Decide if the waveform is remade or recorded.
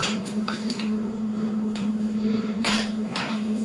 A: remade